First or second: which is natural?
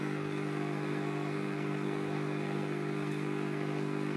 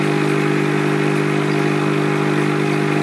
second